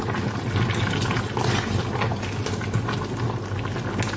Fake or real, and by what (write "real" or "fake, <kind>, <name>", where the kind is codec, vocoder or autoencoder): real